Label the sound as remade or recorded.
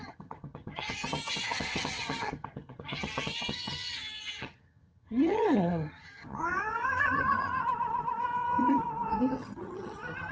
remade